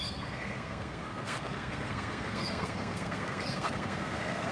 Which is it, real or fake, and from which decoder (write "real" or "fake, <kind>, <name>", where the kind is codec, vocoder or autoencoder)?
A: fake, codec, SNAC